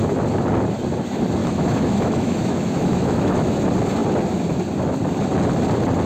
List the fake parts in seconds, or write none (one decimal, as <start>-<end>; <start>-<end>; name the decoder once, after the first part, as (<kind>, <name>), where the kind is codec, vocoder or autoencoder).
1.4-3.5 (autoencoder, DAC-VAE)